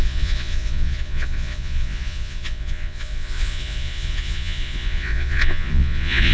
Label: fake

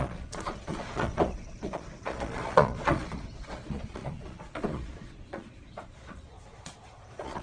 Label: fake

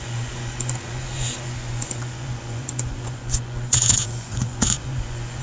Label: fake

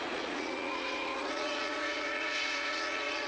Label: fake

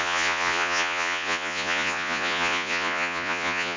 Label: fake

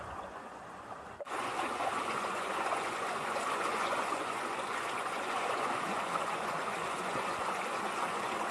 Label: fake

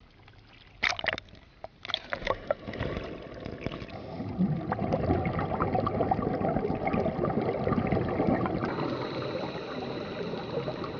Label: real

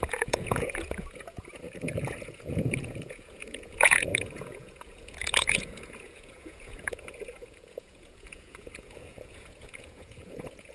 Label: fake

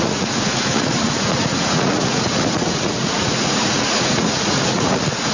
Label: fake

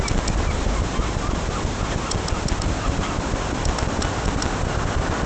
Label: real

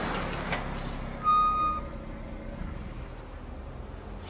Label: real